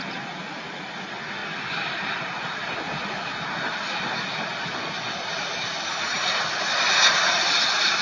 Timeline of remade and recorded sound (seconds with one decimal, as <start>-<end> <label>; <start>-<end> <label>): 0.0-8.0 recorded